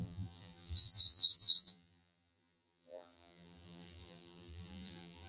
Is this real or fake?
fake